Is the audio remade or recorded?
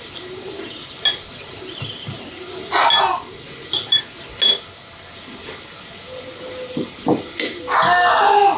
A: recorded